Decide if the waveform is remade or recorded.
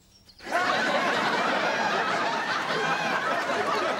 remade